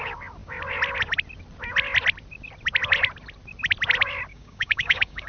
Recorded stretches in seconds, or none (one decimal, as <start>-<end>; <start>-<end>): 0.0-4.3